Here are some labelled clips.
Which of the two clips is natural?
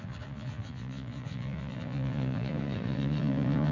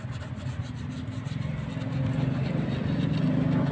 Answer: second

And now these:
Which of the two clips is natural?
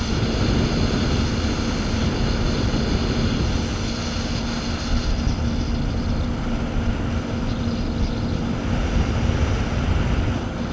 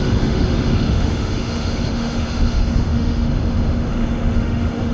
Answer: first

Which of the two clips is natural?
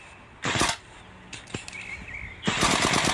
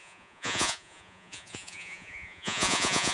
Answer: first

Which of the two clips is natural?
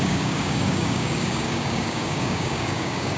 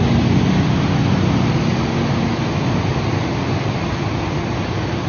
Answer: second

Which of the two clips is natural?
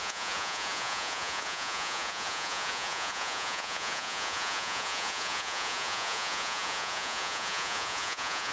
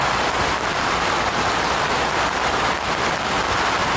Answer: second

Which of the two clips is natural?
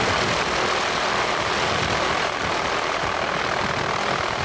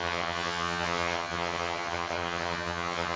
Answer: first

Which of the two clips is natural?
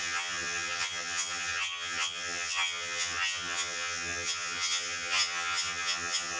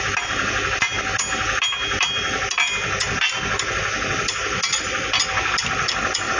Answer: second